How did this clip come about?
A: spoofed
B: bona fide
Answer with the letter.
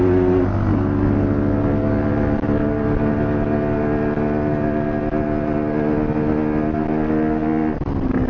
B